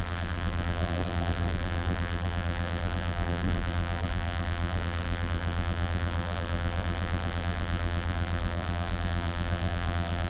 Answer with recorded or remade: remade